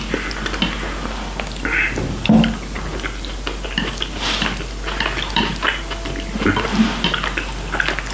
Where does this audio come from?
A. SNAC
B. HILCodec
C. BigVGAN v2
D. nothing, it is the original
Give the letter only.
D